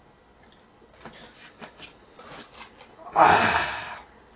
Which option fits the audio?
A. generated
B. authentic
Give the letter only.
B